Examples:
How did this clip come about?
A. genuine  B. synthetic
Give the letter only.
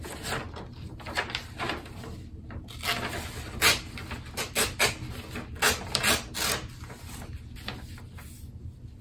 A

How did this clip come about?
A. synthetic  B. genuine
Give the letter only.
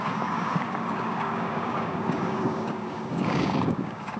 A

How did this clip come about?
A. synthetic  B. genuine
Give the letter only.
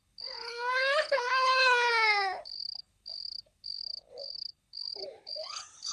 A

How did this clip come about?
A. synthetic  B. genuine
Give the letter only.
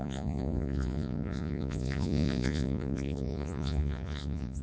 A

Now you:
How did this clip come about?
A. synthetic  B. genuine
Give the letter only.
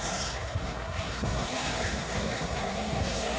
A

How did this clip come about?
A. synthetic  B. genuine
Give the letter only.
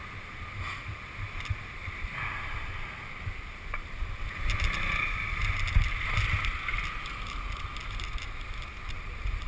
B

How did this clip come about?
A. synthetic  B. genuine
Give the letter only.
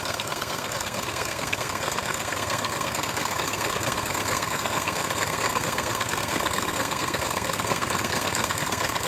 A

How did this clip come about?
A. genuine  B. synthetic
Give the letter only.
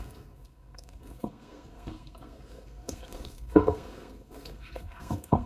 B